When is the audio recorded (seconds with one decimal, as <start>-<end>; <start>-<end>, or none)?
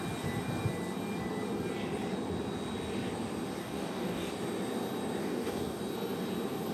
0.0-3.6; 4.3-5.2; 5.8-6.7